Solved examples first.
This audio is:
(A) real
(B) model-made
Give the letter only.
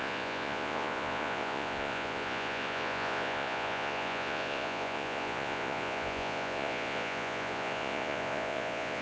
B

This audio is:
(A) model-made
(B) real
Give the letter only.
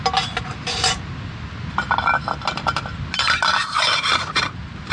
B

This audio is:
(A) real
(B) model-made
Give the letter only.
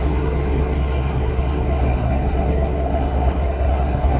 B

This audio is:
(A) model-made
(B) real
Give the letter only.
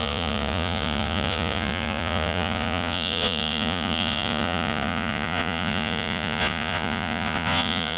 A